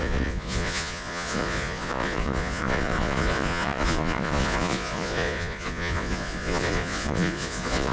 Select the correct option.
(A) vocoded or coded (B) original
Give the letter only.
A